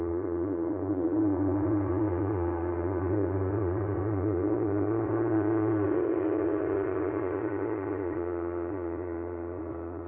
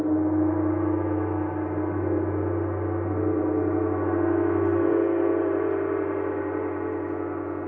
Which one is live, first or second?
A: second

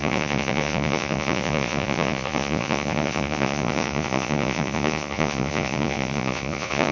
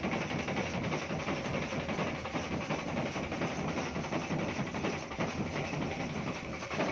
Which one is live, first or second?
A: second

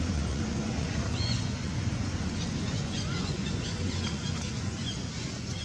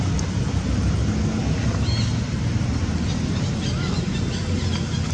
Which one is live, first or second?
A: second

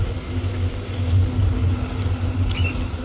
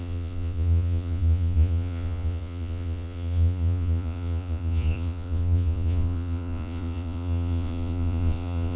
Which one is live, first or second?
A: first